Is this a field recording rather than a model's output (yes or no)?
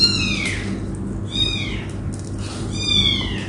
yes